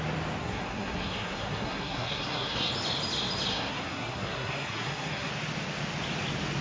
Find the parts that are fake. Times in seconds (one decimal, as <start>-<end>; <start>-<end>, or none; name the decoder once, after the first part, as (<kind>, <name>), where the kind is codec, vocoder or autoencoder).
0.4-2.7 (codec, SNAC); 3.5-5.3